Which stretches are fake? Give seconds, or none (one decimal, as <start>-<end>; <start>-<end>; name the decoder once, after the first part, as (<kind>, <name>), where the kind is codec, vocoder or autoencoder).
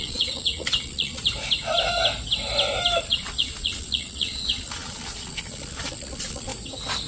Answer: 0.0-1.2 (vocoder, Vocos); 3.0-6.5